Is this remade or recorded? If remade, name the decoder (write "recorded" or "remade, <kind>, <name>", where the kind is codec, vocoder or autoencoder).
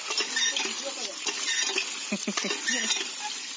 recorded